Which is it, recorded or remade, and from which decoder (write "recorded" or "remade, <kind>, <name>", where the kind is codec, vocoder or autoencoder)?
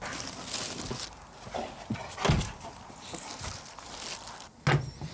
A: recorded